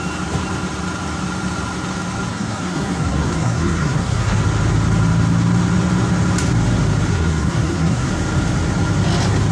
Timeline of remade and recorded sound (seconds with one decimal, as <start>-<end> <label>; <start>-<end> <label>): 0.0-2.3 recorded; 2.3-4.4 remade; 4.4-7.1 recorded; 7.1-8.1 remade; 8.1-9.5 recorded